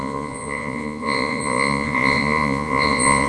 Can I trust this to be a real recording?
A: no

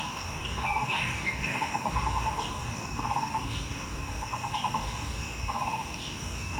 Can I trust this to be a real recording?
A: no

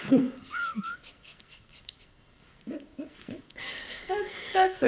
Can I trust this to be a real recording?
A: no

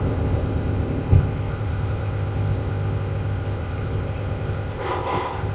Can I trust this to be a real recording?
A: no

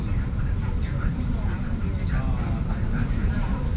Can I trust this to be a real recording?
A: no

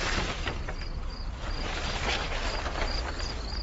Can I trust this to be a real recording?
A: yes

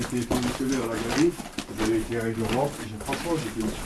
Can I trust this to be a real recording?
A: yes